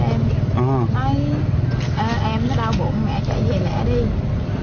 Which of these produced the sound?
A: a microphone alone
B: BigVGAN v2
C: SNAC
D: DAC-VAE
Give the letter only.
A